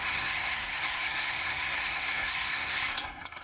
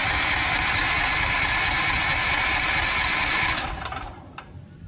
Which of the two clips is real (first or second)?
second